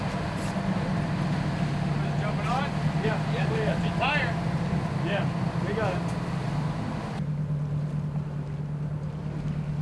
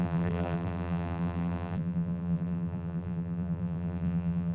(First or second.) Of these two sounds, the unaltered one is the first